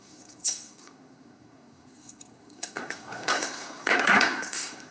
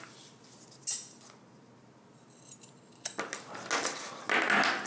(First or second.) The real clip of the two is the second